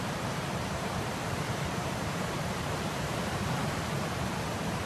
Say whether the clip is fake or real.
fake